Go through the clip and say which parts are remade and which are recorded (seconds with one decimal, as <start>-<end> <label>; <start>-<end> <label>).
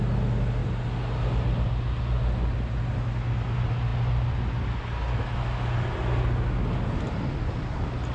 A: 0.0-8.1 recorded